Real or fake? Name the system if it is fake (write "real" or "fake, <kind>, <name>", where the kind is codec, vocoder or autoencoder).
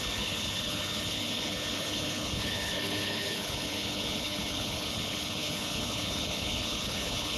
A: fake, codec, HILCodec